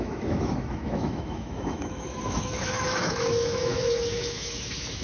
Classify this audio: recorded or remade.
remade